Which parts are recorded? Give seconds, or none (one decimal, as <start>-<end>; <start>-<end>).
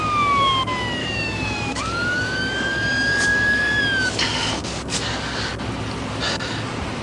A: 0.0-1.0; 3.8-4.6; 5.5-7.0